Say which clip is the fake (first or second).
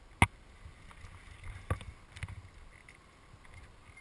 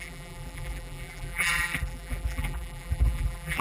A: second